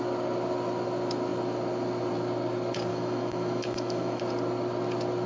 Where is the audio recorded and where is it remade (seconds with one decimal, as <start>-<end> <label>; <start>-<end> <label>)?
0.0-2.9 recorded; 2.9-4.2 remade; 4.2-5.3 recorded